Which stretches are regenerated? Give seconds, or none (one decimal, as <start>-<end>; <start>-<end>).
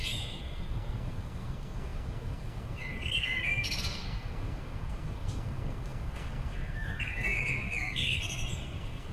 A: 0.0-9.1